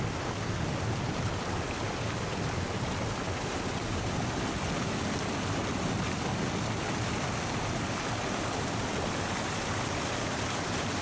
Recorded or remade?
recorded